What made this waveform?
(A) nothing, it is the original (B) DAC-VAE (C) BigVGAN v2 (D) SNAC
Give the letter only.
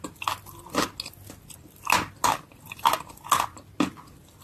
A